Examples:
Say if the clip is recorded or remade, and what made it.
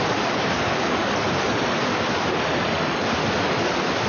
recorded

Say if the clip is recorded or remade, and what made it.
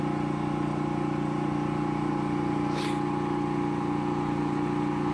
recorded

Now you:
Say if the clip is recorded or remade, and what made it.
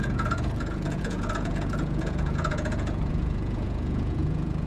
remade, vocoder, Vocos